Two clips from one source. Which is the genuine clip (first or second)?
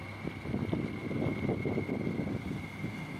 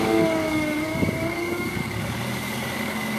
first